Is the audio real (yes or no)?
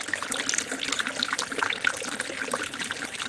yes